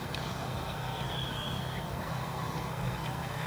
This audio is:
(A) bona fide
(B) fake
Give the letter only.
B